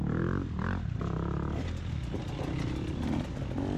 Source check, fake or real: real